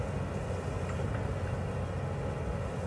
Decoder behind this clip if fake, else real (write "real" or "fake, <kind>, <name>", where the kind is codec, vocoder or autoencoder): real